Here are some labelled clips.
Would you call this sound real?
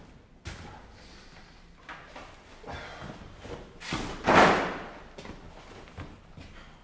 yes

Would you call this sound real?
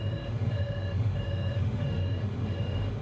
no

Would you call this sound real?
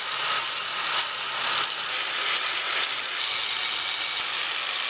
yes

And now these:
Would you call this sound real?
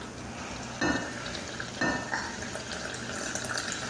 yes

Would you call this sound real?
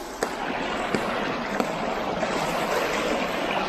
yes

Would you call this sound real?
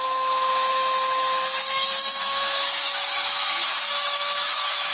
no